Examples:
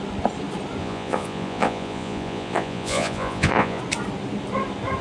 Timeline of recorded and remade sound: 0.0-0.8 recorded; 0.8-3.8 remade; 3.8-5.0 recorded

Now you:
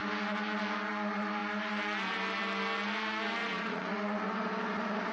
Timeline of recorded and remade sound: 0.0-3.4 recorded; 3.4-3.9 remade; 3.9-5.1 recorded

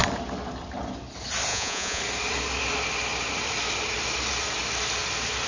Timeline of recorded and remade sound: 0.0-1.5 recorded; 1.5-2.0 remade; 2.0-5.5 recorded

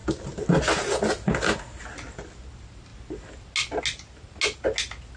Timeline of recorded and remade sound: 0.0-5.2 recorded